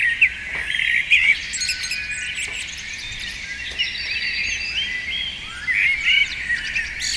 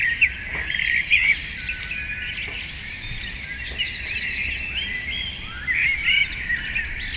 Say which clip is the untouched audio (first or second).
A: first